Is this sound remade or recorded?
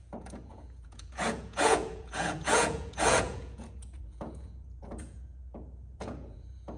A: remade